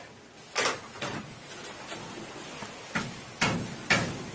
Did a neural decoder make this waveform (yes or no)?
no